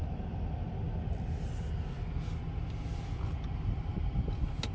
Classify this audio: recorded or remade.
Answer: recorded